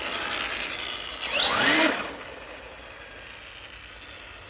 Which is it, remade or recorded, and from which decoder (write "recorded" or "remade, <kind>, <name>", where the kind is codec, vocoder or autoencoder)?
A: recorded